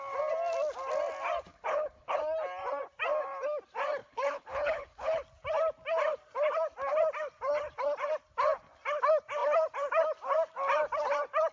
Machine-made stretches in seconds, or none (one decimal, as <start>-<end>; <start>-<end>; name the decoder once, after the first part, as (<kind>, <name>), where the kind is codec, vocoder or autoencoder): 1.5-2.2 (codec, HILCodec); 4.0-5.2